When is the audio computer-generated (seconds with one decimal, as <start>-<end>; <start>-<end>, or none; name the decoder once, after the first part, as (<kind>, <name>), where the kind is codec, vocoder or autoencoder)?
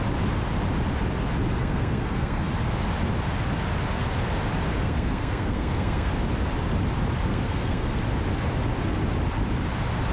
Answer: 1.6-2.5 (codec, SNAC); 4.8-6.1; 7.3-8.0